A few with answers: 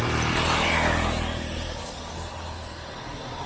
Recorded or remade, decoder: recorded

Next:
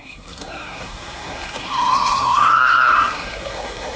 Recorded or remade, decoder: remade, codec, SNAC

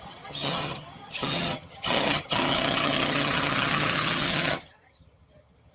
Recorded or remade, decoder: remade, vocoder, HiFi-GAN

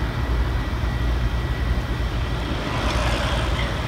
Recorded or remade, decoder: recorded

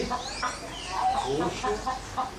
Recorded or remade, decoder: recorded